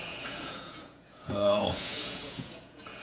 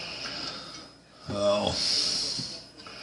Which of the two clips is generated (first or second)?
first